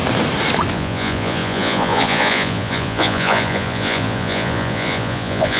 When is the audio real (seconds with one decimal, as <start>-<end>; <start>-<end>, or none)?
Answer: 0.0-0.7